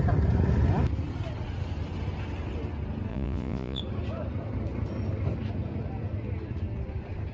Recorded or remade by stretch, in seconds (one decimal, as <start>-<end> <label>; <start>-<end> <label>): 0.0-3.1 recorded; 3.1-3.8 remade; 3.8-7.3 recorded